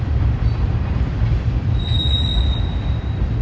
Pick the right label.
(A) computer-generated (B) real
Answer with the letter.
A